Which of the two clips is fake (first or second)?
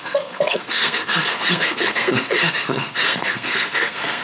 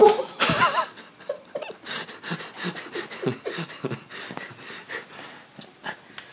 first